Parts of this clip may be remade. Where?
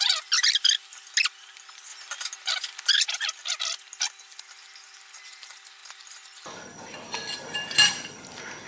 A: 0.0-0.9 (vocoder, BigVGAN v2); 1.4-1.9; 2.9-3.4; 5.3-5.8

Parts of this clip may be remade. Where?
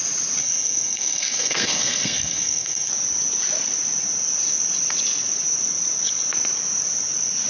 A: 0.4-2.9 (codec, SNAC)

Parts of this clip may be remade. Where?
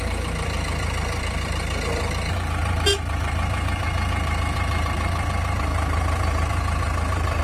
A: 0.0-7.4 (vocoder, BigVGAN v2)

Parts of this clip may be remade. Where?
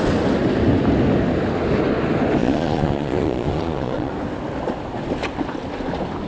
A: 2.4-4.1 (vocoder, Vocos)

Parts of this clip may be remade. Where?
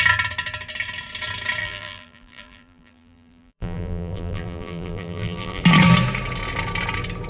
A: 1.6-5.6 (vocoder, BigVGAN v2)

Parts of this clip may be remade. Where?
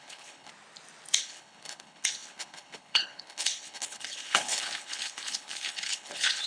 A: 0.0-0.5 (codec, HILCodec); 1.2-6.5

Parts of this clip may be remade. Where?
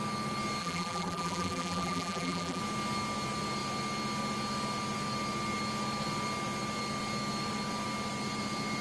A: 0.6-2.6 (vocoder, BigVGAN v2)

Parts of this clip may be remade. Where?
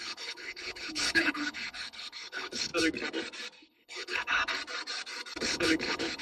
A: 0.0-2.7 (codec, HILCodec); 3.7-4.4; 5.4-6.2